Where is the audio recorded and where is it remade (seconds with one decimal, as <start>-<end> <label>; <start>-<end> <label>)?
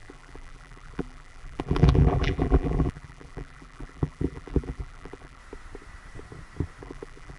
0.0-5.4 remade; 5.4-6.8 recorded; 6.8-7.4 remade